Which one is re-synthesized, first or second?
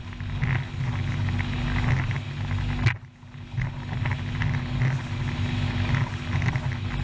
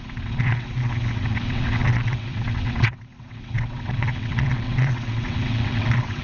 second